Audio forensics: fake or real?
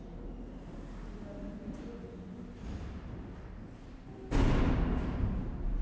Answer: real